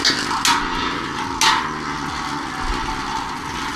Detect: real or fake real